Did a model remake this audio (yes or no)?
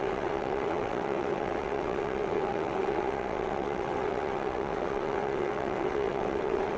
yes